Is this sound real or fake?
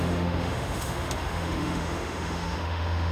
fake